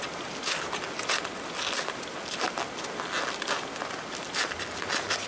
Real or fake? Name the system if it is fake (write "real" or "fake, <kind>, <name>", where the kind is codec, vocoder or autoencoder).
real